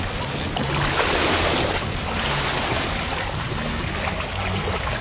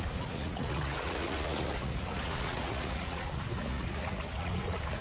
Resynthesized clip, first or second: second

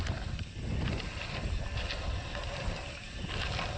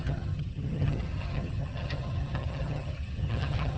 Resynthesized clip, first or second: second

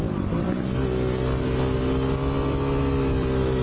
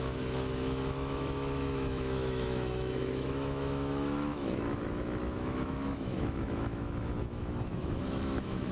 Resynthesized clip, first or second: second